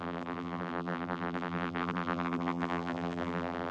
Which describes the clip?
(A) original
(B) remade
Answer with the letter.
B